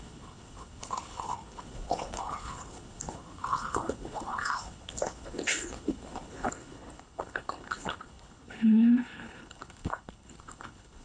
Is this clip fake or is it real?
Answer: fake